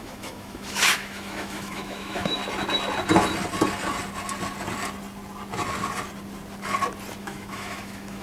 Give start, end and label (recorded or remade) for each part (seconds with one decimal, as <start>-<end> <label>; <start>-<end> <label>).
0.0-2.4 remade; 2.4-7.2 recorded; 7.2-8.2 remade